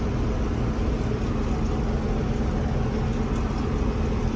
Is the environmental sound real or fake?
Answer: real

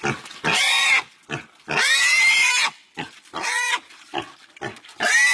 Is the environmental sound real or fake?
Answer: real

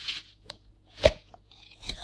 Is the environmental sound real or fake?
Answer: fake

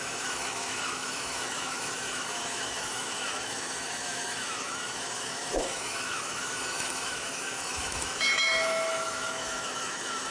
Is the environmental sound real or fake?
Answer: fake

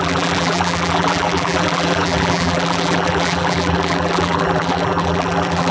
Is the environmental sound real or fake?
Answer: fake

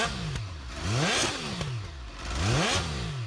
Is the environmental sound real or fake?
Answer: real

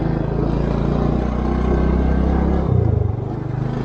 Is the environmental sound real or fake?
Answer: real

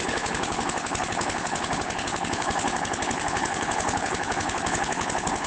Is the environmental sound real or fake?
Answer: fake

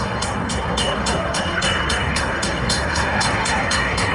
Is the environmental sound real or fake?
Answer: fake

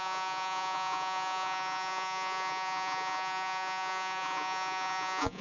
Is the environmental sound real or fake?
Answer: fake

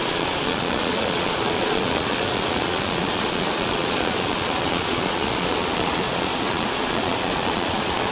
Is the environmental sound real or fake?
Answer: fake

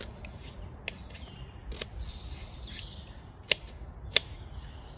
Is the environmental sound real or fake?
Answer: real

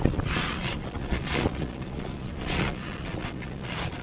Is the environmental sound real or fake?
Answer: fake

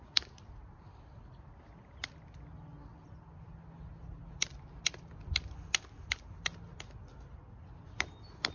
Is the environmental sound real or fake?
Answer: real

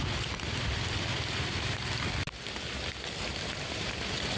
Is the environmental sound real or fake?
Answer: real